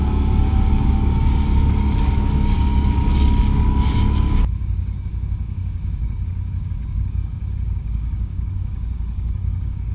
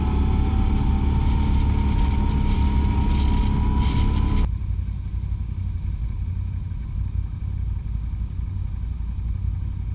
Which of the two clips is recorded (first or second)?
second